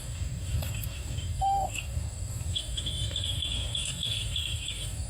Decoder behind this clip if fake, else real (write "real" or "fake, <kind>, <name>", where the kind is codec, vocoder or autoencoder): fake, codec, DAC